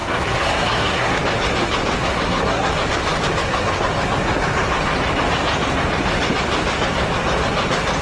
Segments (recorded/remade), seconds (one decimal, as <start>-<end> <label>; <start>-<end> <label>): 0.0-1.2 remade; 1.2-2.0 recorded; 2.0-2.7 remade; 2.7-8.0 recorded